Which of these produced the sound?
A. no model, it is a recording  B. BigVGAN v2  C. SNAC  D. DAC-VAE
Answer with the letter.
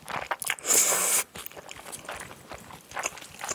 A